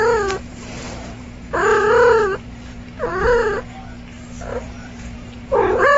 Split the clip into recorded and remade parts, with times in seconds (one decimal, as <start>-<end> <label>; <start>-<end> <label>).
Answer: 0.0-0.5 recorded; 0.5-3.1 remade; 3.1-4.5 recorded; 4.5-6.0 remade